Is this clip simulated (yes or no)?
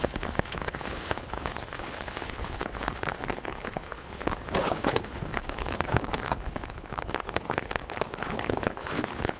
yes